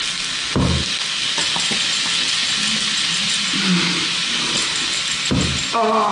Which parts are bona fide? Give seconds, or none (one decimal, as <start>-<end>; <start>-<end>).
0.0-6.1